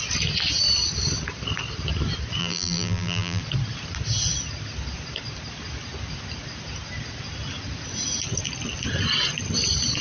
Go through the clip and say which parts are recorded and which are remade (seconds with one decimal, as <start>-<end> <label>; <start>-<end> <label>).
0.0-2.4 recorded; 2.4-3.4 remade; 3.4-10.0 recorded